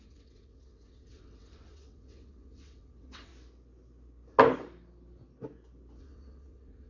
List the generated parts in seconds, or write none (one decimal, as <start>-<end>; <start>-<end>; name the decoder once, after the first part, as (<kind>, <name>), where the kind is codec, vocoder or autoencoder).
0.0-3.3 (vocoder, WaveNeXt); 6.0-6.9